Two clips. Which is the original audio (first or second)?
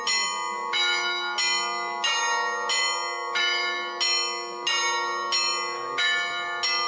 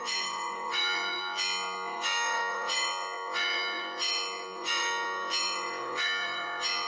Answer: first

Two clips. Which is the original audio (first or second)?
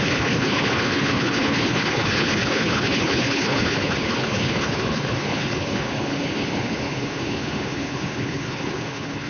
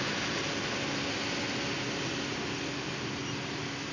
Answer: second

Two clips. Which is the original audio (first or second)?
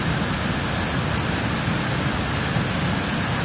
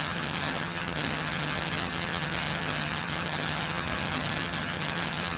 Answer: first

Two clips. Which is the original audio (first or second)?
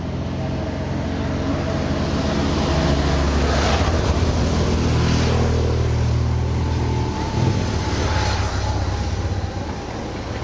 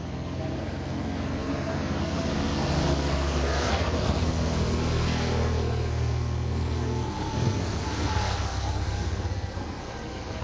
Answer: first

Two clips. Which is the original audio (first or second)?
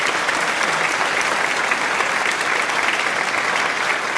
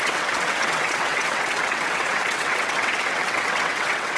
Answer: first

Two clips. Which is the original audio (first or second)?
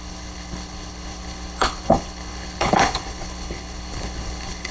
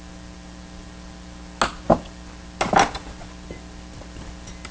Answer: second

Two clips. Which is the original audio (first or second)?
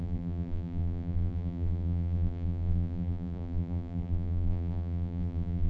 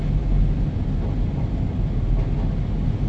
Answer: second